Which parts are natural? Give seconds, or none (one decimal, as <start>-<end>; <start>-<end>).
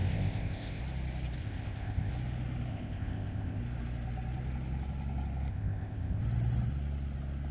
0.8-1.4; 2.1-2.7; 3.6-5.5; 6.2-7.5